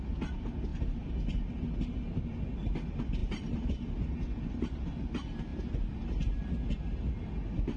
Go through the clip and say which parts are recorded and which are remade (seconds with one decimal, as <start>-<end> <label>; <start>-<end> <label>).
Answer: 0.0-3.2 recorded; 3.2-3.9 remade; 3.9-7.8 recorded